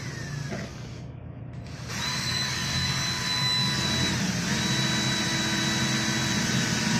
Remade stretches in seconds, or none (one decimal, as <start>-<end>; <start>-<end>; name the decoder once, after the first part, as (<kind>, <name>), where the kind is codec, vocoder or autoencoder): 0.7-1.4 (codec, DAC); 2.1-3.9